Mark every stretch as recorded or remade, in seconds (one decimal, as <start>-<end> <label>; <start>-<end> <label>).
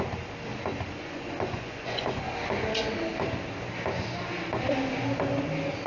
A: 0.0-1.0 recorded; 1.0-2.2 remade; 2.2-5.9 recorded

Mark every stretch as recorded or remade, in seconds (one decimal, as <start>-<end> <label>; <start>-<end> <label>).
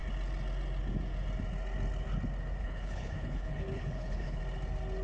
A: 0.0-2.6 recorded; 2.6-4.4 remade; 4.4-5.0 recorded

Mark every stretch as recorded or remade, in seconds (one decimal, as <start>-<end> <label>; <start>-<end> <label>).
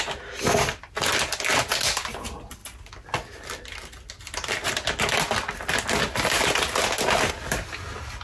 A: 0.0-8.2 recorded